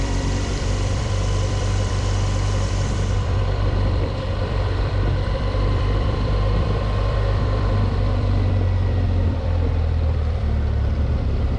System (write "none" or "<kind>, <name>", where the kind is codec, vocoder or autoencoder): vocoder, BigVGAN v2